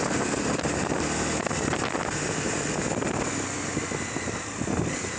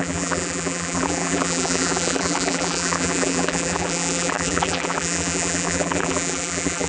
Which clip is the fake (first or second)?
second